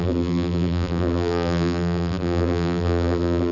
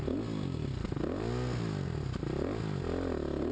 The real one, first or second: second